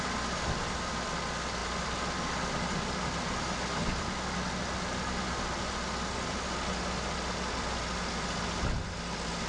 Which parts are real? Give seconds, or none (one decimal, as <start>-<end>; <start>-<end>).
0.0-9.5